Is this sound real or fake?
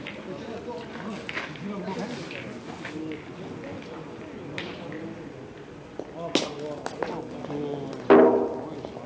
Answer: real